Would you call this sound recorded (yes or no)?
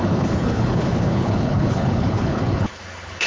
no